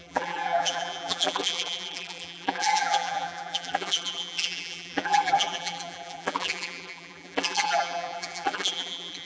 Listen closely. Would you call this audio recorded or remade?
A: remade